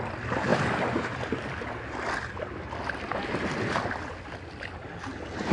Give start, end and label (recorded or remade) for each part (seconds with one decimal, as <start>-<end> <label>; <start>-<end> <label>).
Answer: 0.0-5.5 recorded